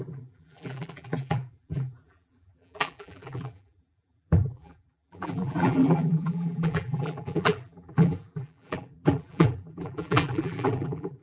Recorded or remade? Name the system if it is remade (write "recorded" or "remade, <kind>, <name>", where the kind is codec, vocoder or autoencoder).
remade, vocoder, BigVGAN v2